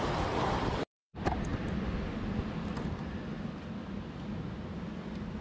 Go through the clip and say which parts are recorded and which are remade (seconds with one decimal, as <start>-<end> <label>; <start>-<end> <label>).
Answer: 0.0-5.4 recorded